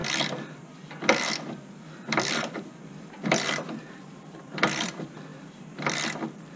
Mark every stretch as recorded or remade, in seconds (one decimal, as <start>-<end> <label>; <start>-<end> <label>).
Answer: 0.0-0.6 recorded; 0.6-6.6 remade

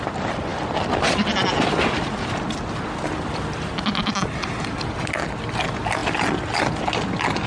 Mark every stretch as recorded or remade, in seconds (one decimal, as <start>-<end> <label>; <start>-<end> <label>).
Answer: 0.0-7.5 recorded

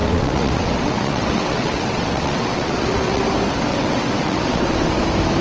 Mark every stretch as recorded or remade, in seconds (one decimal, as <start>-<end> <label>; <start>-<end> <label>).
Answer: 0.0-3.2 remade; 3.2-3.7 recorded; 3.7-5.0 remade; 5.0-5.4 recorded

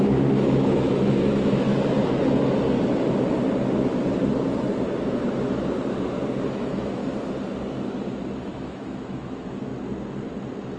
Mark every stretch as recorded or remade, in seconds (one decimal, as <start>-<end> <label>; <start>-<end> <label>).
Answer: 0.0-1.7 remade; 1.7-6.5 recorded; 6.5-7.0 remade; 7.0-8.4 recorded; 8.4-9.7 remade; 9.7-10.8 recorded

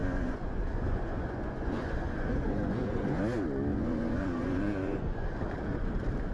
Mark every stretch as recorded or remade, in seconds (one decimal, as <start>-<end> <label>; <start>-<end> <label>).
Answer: 0.0-3.2 remade; 3.2-3.7 recorded; 3.7-5.3 remade; 5.3-6.3 recorded

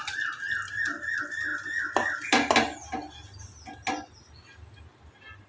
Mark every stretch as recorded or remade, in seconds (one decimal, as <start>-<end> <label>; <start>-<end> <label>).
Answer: 0.0-5.5 recorded

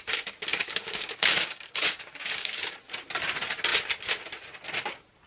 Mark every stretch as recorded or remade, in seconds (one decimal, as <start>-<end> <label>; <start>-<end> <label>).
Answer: 0.0-0.5 recorded; 0.5-2.8 remade; 2.8-5.3 recorded

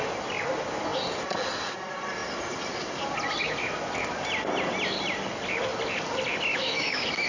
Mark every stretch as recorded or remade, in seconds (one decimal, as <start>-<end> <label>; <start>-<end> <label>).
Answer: 0.0-6.5 recorded; 6.5-7.3 remade